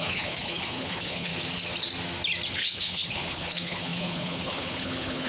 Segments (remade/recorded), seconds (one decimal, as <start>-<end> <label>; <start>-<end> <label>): 0.0-1.3 remade; 1.3-2.5 recorded; 2.5-5.3 remade

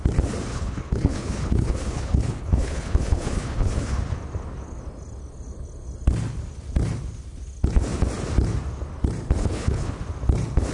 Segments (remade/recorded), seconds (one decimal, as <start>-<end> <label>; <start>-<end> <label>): 0.0-0.5 recorded; 0.5-4.0 remade; 4.0-9.4 recorded; 9.4-10.0 remade; 10.0-10.7 recorded